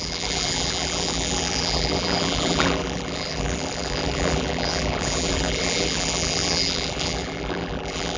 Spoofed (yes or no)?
yes